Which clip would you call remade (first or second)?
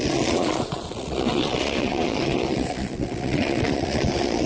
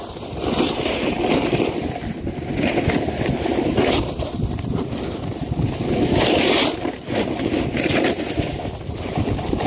first